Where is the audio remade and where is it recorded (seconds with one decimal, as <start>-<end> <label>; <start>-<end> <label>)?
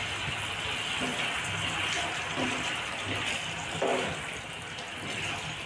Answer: 0.0-5.7 recorded